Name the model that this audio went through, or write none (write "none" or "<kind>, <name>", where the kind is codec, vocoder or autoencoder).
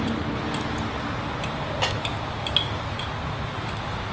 none